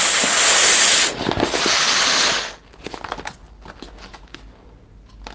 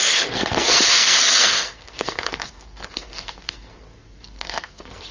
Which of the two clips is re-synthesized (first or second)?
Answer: second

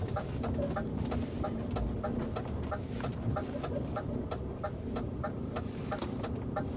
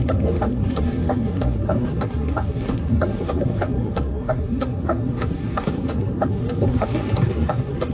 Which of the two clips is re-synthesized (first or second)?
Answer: second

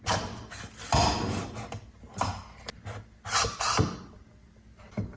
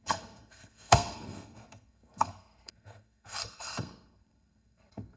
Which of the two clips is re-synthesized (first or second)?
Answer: second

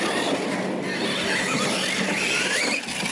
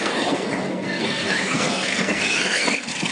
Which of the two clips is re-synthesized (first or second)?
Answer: second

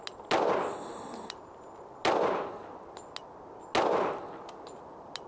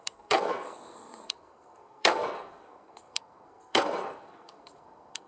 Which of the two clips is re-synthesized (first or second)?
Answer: second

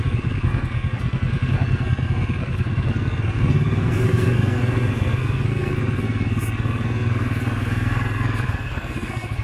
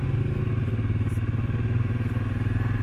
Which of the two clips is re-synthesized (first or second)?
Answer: first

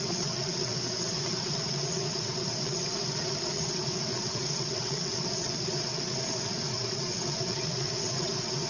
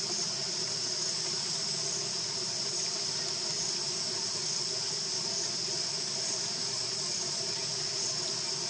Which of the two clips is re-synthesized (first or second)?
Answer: first